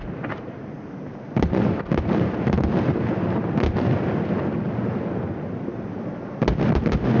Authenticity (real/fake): real